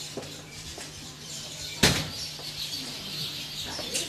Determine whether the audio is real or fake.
fake